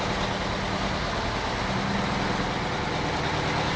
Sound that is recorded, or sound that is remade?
recorded